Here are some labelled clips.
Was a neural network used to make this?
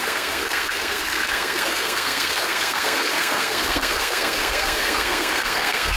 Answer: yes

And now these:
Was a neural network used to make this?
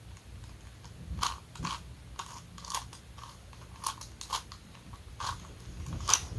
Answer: no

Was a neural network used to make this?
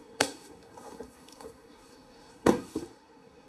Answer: yes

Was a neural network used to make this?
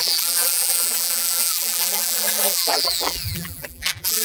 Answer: yes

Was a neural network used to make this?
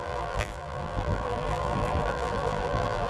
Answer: yes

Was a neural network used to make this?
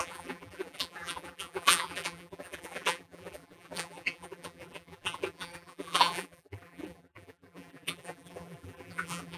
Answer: yes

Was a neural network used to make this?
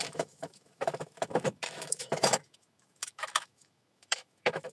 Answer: yes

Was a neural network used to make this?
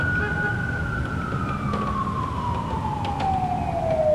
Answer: no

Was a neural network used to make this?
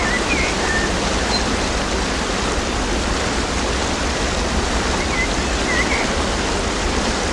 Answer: no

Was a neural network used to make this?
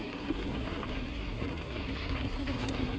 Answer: yes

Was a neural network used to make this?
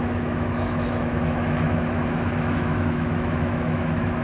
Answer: yes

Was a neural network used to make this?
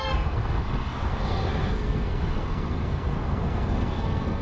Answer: yes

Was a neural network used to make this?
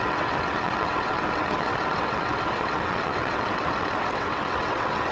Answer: yes